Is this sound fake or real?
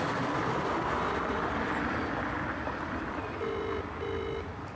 fake